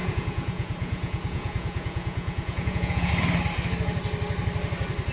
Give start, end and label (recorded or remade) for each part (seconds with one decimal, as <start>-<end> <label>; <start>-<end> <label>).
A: 0.0-3.1 remade; 3.1-5.1 recorded